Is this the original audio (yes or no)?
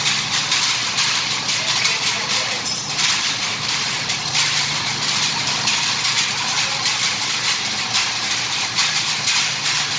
no